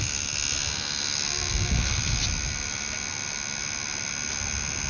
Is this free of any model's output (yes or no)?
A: yes